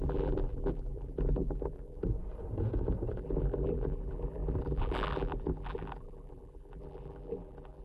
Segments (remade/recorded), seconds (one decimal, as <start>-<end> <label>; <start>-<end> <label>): 0.0-2.0 remade; 2.0-3.2 recorded; 3.2-7.8 remade